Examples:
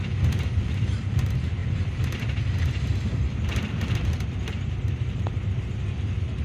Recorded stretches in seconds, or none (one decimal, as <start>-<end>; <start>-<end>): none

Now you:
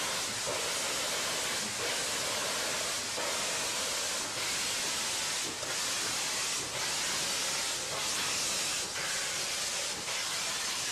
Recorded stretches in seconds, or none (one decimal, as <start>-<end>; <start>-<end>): 0.0-9.2

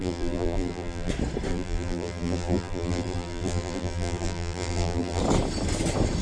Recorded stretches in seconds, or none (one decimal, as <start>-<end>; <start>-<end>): 1.1-1.5; 5.2-6.2

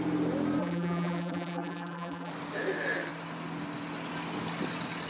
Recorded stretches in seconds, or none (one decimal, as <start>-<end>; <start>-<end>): 0.0-0.6; 2.3-5.1

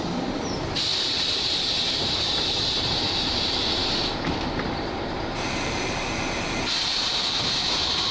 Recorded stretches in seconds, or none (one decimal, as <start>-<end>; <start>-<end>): none

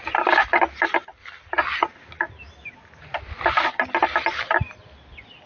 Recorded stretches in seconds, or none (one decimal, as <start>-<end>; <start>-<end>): 0.0-1.2; 2.8-5.5

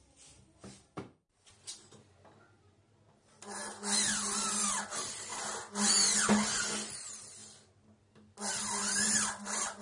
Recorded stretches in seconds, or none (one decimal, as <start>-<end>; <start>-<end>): 0.0-9.8

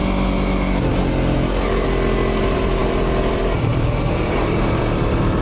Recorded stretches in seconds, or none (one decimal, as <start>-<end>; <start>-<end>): 0.0-2.4